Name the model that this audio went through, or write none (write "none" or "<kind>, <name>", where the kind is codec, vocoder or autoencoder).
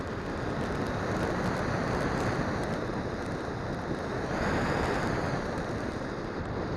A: none